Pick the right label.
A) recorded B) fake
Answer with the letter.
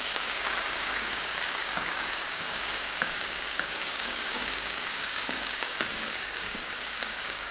B